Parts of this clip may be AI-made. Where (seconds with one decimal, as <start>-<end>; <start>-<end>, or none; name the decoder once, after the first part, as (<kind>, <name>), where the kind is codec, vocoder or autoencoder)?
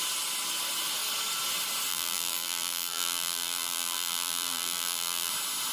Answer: 1.9-5.3 (vocoder, BigVGAN v2)